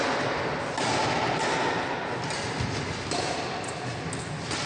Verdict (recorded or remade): recorded